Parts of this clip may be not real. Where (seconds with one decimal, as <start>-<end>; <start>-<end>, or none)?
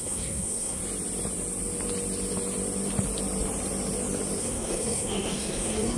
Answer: 0.0-0.8; 4.4-6.0